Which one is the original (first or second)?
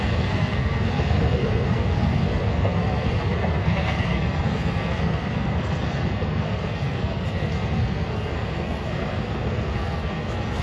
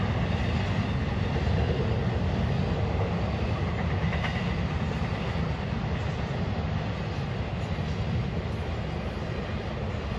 second